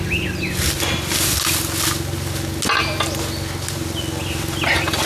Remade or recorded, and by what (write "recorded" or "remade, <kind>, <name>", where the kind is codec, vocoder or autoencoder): recorded